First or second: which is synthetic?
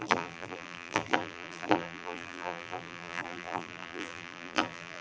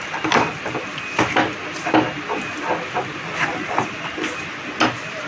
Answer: first